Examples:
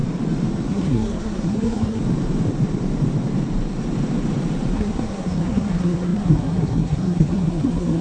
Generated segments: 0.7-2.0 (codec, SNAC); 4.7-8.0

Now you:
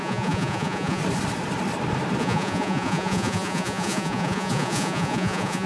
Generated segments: 0.0-1.0 (vocoder, Vocos); 2.2-5.7

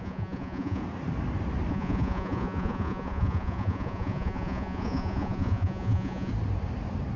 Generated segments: 0.0-0.8 (vocoder, Vocos); 1.7-6.3

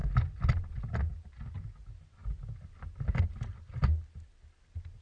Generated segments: none